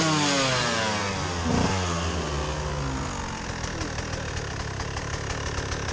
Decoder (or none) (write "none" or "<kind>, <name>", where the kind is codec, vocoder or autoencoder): none